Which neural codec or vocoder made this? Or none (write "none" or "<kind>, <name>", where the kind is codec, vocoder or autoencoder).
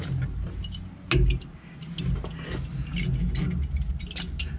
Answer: none